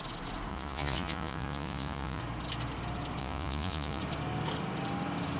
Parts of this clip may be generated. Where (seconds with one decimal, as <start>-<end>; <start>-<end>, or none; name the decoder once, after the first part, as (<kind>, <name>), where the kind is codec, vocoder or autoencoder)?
0.5-2.2 (vocoder, Vocos); 3.2-4.0